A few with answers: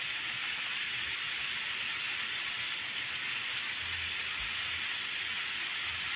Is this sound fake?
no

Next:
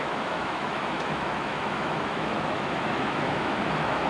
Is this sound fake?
yes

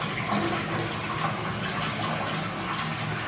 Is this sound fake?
no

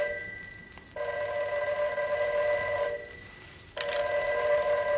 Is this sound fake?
no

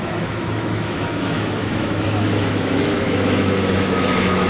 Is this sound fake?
yes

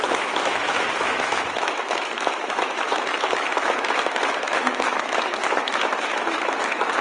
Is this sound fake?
yes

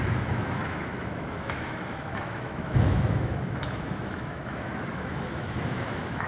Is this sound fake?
yes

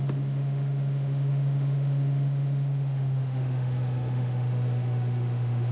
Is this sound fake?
yes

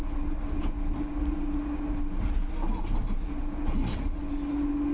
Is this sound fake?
no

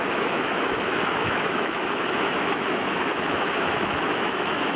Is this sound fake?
yes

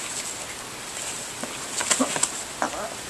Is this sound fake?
no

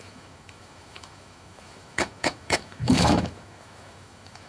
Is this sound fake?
yes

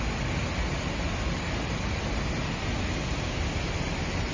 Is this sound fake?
no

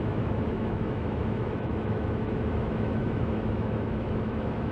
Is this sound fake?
yes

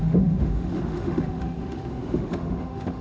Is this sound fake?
yes